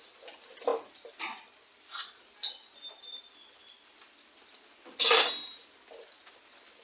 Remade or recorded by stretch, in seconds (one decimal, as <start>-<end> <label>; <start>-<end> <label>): 0.0-6.8 recorded